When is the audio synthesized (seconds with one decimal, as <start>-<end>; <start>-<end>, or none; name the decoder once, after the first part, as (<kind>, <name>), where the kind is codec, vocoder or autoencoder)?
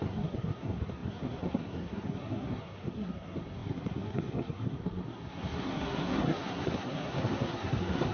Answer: 0.0-8.1 (codec, SNAC)